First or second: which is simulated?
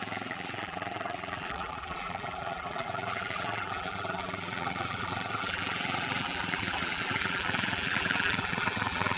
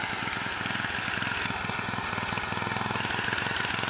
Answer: first